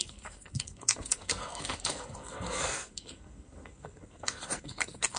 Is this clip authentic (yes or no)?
no